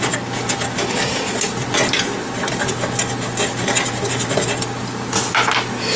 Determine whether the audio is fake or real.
real